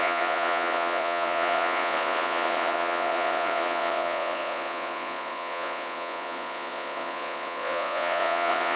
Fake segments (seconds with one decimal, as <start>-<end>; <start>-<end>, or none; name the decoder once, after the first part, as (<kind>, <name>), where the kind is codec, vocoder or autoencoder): 0.0-8.8 (vocoder, Vocos)